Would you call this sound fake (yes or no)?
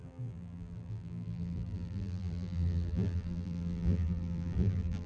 yes